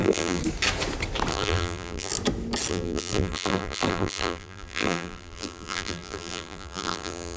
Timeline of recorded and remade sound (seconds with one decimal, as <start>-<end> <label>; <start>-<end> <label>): 0.0-0.4 remade; 0.4-1.3 recorded; 1.3-2.1 remade; 2.1-2.7 recorded; 2.7-7.4 remade

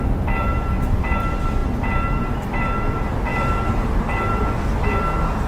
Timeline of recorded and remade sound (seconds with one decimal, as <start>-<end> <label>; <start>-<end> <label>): 0.0-5.5 recorded